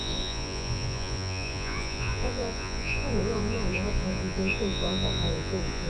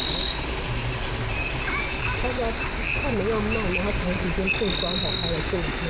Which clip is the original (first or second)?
second